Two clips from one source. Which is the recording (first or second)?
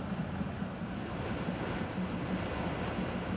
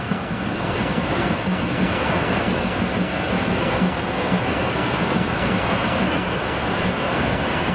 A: first